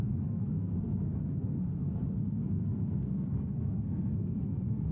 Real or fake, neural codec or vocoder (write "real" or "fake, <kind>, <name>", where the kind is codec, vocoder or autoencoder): fake, codec, SNAC